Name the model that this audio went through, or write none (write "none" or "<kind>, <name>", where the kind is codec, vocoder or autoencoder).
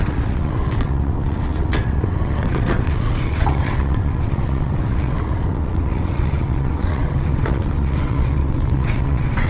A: vocoder, WaveNeXt